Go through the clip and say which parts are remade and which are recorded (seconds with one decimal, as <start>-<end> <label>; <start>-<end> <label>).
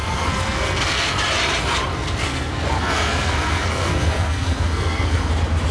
0.0-1.2 remade; 1.2-1.9 recorded; 1.9-5.3 remade; 5.3-5.7 recorded